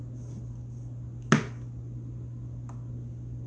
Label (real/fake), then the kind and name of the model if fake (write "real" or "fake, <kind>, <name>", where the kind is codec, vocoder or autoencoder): real